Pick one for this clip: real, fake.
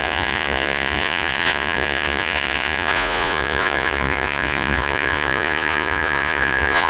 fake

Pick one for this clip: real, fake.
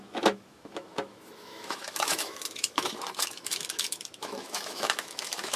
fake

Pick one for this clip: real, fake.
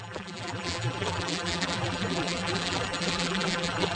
fake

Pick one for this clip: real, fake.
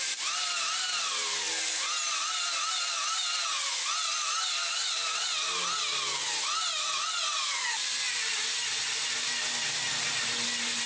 real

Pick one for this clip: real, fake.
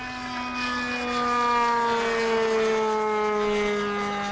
real